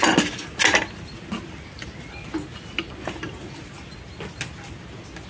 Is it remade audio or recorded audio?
recorded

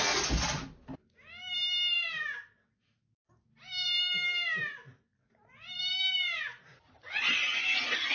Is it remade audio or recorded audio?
recorded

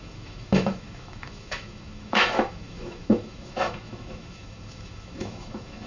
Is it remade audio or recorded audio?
remade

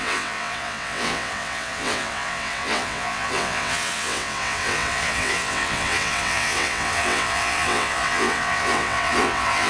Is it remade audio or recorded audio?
remade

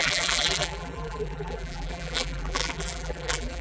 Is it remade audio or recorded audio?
remade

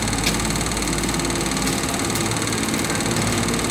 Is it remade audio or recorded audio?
recorded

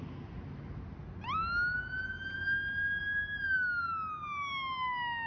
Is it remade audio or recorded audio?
recorded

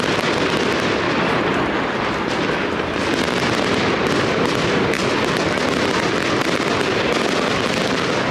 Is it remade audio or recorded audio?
recorded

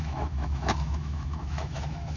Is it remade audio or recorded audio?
remade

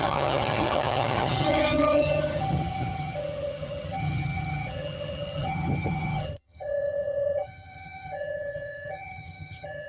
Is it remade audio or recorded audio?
remade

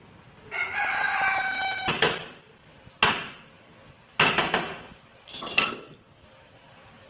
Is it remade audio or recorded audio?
recorded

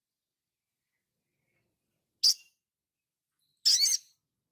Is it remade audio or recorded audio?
recorded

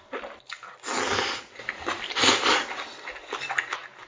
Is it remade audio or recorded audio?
recorded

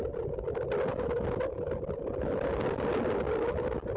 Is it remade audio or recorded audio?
recorded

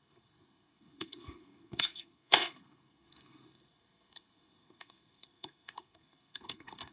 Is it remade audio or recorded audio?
remade